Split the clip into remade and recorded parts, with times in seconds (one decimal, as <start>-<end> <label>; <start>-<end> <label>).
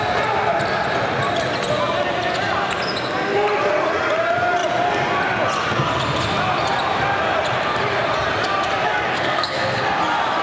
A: 0.0-9.1 recorded; 9.1-9.8 remade; 9.8-10.4 recorded